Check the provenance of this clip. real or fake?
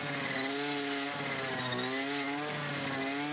real